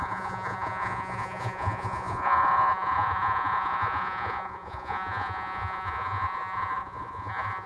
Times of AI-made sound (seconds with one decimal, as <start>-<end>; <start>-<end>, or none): 0.0-7.7